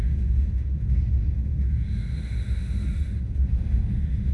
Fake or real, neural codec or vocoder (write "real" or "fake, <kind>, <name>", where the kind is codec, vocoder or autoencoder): fake, autoencoder, DAC-VAE